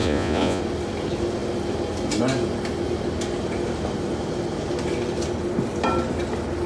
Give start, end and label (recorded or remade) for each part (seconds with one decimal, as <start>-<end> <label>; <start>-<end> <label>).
0.0-0.6 remade; 0.6-6.7 recorded

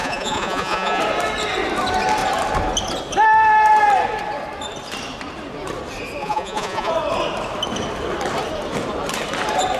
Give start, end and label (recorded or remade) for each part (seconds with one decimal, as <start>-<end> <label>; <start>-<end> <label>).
0.0-1.0 remade; 1.0-6.2 recorded; 6.2-6.9 remade; 6.9-9.8 recorded

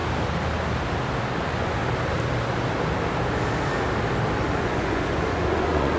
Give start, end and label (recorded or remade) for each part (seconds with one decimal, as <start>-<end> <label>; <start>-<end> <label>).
0.0-1.4 recorded; 1.4-1.8 remade; 1.8-4.6 recorded; 4.6-6.0 remade

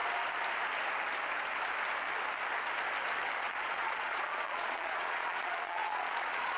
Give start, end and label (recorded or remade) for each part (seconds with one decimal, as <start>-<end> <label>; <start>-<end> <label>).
0.0-3.4 recorded; 3.4-6.6 remade

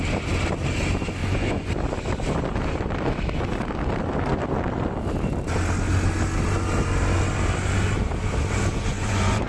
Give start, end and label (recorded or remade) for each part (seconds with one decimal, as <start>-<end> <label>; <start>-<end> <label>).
0.0-1.2 recorded; 1.2-1.7 remade; 1.7-8.7 recorded; 8.7-9.5 remade